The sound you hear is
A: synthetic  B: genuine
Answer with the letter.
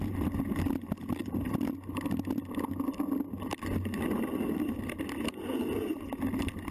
B